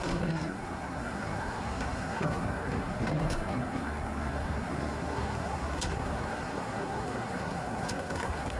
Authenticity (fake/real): fake